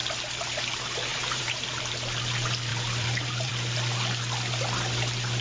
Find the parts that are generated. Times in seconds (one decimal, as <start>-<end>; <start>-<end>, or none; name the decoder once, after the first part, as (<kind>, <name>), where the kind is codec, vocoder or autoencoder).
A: 1.1-1.8 (vocoder, BigVGAN v2); 2.7-3.5

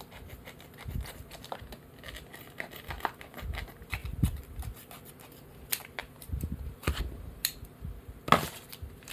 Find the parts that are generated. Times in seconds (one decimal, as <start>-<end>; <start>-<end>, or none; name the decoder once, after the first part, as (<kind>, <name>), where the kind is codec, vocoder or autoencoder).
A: 4.0-5.1 (vocoder, BigVGAN v2); 6.0-7.0